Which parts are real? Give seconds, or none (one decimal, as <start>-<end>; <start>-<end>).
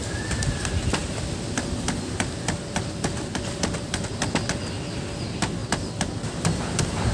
0.0-1.0; 2.6-7.1